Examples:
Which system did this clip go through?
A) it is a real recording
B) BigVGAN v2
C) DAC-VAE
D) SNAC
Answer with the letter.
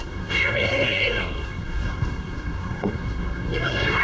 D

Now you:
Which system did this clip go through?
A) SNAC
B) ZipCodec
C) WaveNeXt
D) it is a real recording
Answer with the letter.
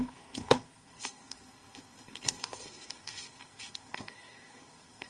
A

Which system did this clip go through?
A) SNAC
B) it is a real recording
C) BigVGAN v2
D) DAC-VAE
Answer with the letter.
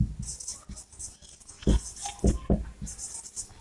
B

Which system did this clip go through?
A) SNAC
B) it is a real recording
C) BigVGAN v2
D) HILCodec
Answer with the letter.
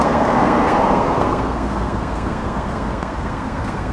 A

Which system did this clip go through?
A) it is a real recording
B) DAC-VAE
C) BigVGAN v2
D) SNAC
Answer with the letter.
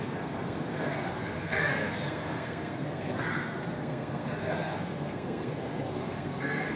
D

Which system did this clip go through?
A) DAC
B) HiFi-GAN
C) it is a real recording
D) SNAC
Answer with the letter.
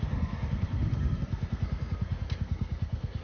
D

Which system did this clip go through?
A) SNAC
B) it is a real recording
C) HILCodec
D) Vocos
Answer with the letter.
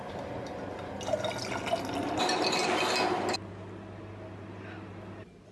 B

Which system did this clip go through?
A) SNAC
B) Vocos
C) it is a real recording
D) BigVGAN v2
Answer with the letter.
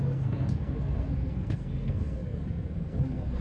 A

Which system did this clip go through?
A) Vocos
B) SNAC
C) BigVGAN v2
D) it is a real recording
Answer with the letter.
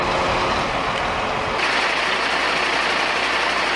D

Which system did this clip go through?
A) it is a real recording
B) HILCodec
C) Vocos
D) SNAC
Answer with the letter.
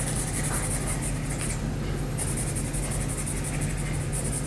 A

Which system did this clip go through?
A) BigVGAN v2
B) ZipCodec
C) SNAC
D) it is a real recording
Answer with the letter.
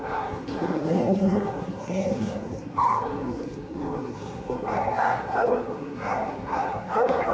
C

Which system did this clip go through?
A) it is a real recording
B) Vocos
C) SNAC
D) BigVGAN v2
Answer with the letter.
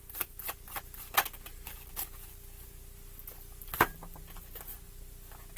A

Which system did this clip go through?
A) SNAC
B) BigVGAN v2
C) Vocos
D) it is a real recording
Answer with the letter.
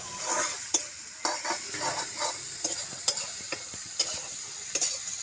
D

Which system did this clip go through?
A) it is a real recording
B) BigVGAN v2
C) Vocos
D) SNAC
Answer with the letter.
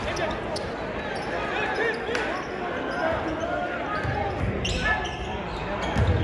A